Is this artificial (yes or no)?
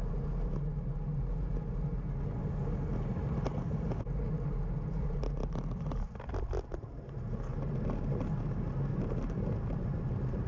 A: no